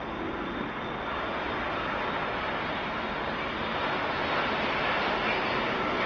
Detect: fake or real real